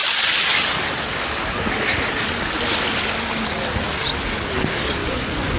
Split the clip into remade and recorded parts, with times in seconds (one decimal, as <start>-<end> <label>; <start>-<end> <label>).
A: 0.0-5.0 recorded; 5.0-5.6 remade